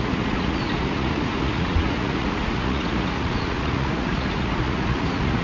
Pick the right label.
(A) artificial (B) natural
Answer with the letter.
A